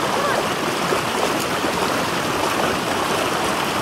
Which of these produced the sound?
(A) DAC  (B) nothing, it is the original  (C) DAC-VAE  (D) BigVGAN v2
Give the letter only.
B